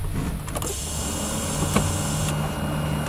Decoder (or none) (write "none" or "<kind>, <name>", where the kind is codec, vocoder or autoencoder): none